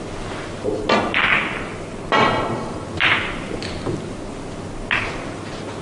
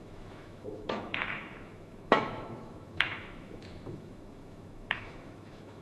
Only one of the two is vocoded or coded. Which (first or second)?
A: second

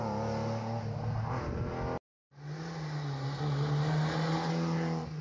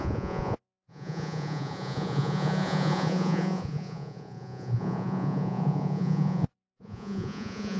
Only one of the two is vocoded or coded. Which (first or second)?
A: second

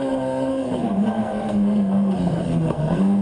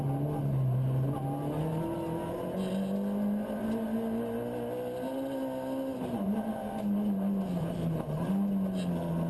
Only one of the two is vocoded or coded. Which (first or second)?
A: first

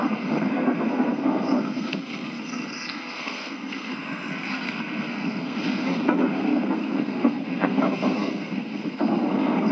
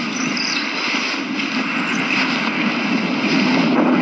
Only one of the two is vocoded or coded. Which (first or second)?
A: first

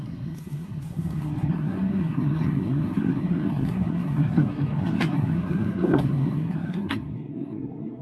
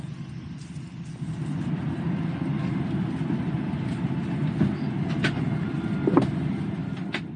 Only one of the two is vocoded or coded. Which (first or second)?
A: first